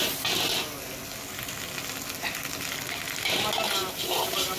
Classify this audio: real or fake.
real